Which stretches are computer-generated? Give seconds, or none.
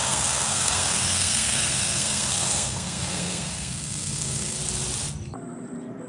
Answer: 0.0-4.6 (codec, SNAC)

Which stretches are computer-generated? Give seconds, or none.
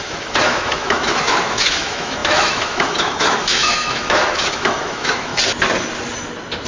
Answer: 0.0-5.3 (autoencoder, DAC-VAE)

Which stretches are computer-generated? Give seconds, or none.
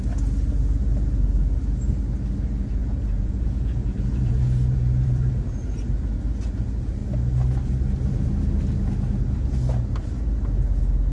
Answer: 2.8-5.3 (vocoder, Vocos)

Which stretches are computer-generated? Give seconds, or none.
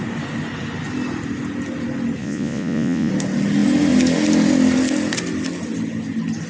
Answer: 2.2-3.1 (vocoder, Vocos)